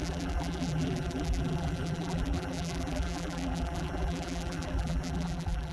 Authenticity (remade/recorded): remade